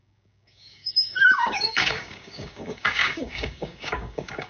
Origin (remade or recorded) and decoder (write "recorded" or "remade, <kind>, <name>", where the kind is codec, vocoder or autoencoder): remade, codec, DAC